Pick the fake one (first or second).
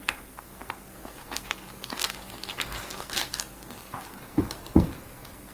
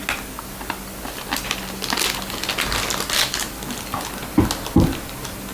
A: first